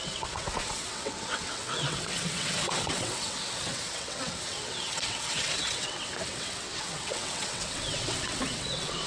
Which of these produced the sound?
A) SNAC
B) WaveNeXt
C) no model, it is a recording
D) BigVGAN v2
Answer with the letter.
B